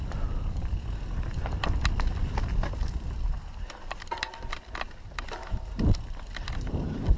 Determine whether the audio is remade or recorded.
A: recorded